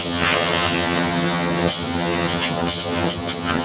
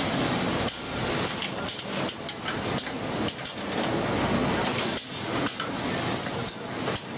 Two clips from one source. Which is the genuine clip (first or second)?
second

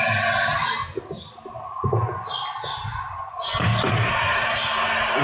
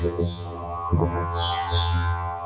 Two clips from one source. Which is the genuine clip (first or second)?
first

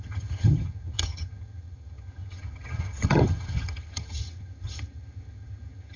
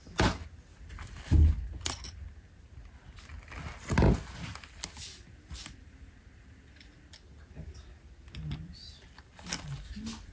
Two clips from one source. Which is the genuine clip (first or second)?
second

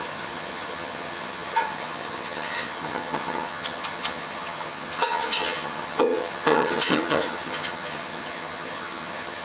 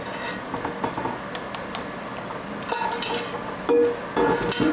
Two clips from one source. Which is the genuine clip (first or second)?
second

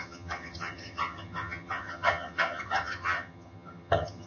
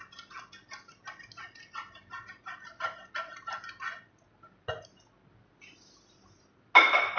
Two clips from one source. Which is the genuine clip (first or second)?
second